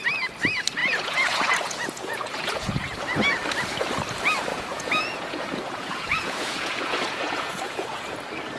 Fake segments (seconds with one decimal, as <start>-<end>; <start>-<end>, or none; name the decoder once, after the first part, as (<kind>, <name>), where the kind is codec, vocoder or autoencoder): 0.8-3.0 (vocoder, Vocos); 4.5-8.2